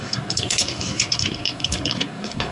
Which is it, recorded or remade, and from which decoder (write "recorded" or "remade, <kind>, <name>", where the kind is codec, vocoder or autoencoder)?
remade, codec, SNAC